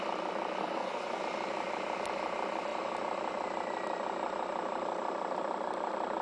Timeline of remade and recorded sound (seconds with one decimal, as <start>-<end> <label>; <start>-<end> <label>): 0.0-0.6 recorded; 0.6-1.2 remade; 1.2-6.2 recorded

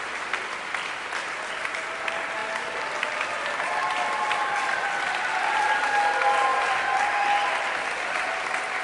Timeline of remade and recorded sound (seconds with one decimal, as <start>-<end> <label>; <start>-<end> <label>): 0.0-8.8 recorded